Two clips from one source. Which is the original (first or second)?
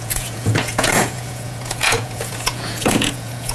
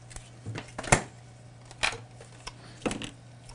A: second